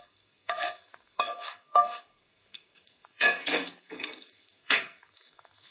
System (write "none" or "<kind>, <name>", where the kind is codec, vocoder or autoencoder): codec, SNAC